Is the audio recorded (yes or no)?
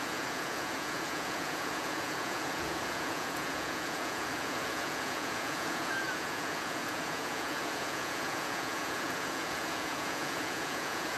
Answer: no